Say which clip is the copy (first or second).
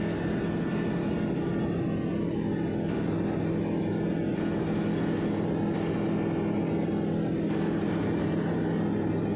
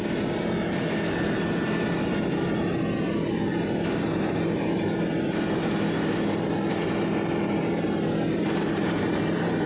second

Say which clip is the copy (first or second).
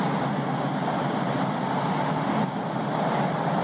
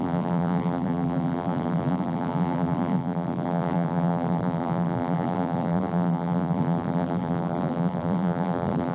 second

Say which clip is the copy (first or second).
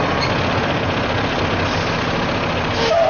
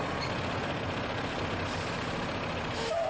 second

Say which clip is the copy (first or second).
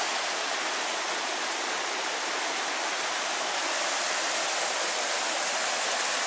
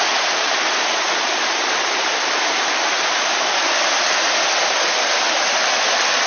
second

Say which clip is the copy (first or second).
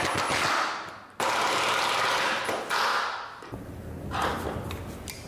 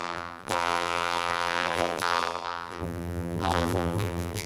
second